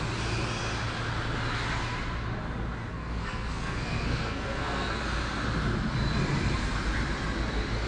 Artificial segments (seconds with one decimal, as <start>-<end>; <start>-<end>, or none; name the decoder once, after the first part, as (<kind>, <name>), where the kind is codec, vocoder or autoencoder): 2.9-5.0 (codec, SNAC)

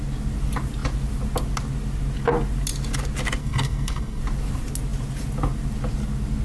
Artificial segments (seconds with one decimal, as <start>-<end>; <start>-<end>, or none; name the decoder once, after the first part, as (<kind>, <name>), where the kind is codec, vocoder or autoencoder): 3.4-4.2 (codec, SNAC)

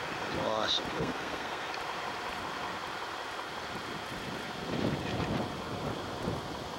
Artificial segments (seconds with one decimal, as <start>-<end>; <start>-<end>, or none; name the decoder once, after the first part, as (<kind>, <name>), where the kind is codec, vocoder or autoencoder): 0.9-1.7 (codec, SNAC)

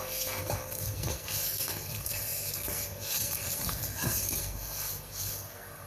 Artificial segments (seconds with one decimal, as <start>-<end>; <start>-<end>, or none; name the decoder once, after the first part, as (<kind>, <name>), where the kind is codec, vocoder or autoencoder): 0.0-5.9 (codec, SNAC)